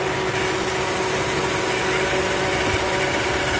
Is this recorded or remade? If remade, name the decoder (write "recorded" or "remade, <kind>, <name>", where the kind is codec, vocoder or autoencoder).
recorded